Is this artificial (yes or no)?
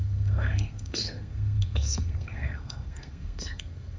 yes